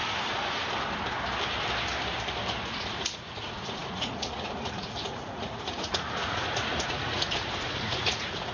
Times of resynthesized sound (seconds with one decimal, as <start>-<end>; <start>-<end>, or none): 2.7-8.5